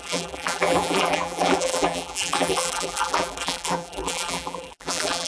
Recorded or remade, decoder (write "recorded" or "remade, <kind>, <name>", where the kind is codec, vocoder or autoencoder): remade, vocoder, BigVGAN v2